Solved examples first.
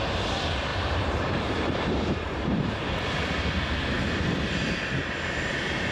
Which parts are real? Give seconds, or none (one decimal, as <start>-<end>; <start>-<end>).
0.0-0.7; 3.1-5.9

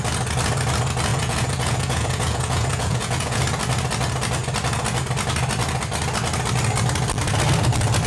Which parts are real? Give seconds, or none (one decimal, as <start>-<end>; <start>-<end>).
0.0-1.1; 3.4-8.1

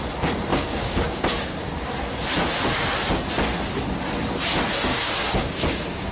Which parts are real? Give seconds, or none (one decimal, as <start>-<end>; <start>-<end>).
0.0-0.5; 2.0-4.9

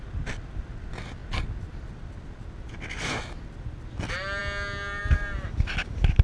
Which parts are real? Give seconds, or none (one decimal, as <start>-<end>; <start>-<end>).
0.0-6.2